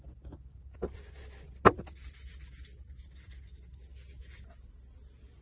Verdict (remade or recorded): recorded